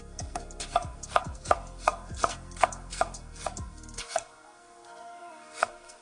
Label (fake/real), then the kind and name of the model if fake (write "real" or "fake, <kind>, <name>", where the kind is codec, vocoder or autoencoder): fake, codec, SNAC